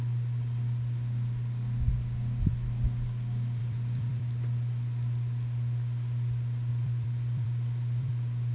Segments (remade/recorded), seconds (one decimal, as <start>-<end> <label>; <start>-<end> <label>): 0.0-3.6 recorded; 3.6-4.2 remade; 4.2-6.7 recorded; 6.7-8.1 remade; 8.1-8.5 recorded